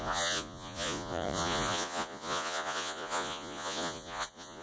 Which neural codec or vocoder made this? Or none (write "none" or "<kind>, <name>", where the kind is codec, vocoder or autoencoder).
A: vocoder, Vocos